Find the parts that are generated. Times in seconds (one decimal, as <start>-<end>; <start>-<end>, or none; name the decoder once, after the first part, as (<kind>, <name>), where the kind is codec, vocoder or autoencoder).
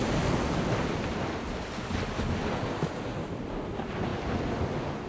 none